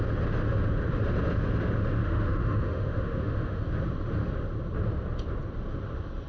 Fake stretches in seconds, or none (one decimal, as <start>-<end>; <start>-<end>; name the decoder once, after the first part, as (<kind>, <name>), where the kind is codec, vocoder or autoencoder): 2.0-3.6 (autoencoder, DAC-VAE)